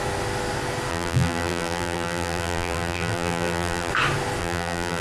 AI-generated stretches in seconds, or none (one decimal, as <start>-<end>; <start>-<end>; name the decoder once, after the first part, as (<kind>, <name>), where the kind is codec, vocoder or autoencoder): 0.9-3.9 (vocoder, BigVGAN v2); 4.4-5.0